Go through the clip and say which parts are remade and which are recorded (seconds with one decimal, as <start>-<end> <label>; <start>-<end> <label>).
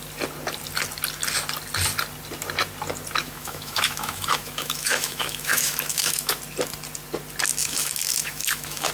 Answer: 0.0-3.2 recorded; 3.2-6.4 remade; 6.4-7.6 recorded; 7.6-8.9 remade